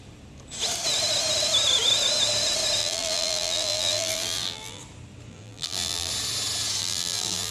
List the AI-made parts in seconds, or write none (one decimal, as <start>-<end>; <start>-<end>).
2.8-4.8; 5.3-6.1; 6.8-7.5